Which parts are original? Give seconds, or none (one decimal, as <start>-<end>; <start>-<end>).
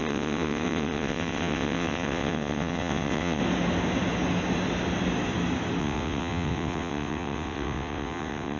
3.4-5.8